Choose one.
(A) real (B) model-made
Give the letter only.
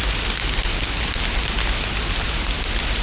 A